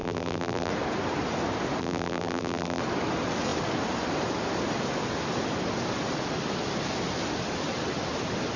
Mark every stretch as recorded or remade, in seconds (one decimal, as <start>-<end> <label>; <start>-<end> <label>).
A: 0.0-0.7 remade; 0.7-1.8 recorded; 1.8-2.8 remade; 2.8-8.6 recorded